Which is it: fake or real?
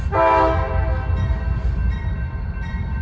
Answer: real